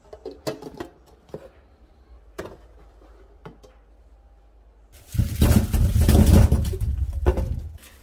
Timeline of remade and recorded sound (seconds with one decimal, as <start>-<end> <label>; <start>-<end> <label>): 0.0-3.4 remade; 3.4-6.8 recorded; 6.8-8.0 remade